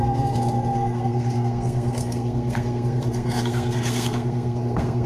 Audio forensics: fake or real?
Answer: fake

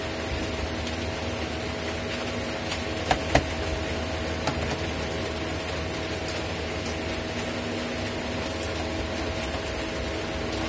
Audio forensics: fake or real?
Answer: real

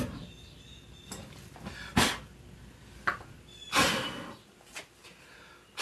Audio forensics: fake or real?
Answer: real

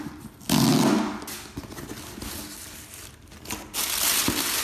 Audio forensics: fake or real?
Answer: real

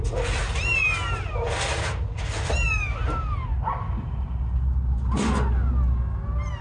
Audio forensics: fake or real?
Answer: real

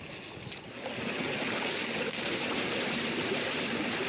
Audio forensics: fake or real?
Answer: real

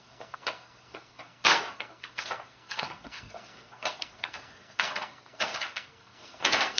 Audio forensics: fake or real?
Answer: fake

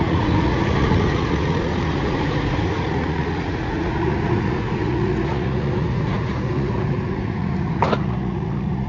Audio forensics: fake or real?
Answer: fake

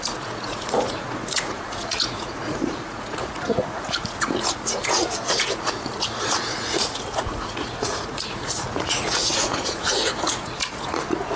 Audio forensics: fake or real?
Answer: fake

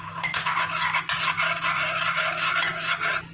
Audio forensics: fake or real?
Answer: real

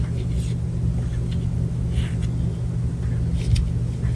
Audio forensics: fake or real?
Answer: real